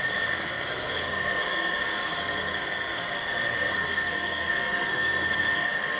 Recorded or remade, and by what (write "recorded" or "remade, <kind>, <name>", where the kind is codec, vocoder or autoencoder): remade, codec, SNAC